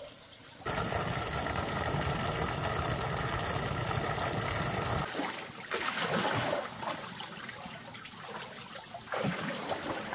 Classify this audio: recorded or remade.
recorded